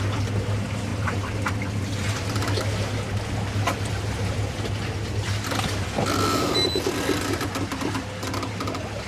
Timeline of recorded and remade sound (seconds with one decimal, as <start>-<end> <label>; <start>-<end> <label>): 0.0-9.1 recorded